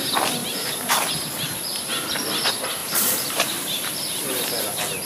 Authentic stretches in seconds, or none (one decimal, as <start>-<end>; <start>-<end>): 0.0-0.4; 1.1-2.8; 4.4-5.1